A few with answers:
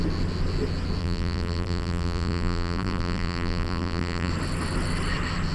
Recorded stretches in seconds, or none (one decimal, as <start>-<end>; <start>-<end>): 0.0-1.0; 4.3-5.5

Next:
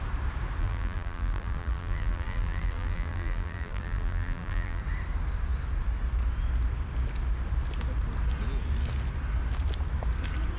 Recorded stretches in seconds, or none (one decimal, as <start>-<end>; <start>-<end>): 0.0-0.6; 4.8-10.6

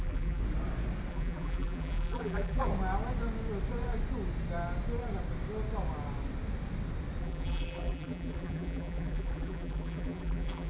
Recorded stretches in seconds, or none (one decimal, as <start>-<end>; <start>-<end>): 0.4-1.1; 2.7-7.2

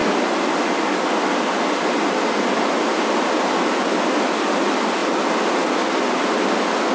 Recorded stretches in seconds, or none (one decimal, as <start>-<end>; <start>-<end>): 0.0-6.9

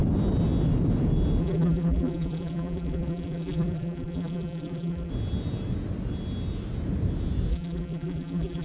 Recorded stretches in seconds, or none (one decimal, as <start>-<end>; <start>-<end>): 0.0-1.4; 5.1-7.5

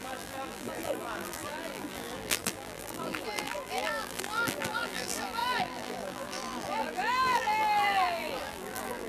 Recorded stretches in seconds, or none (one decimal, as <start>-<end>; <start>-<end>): none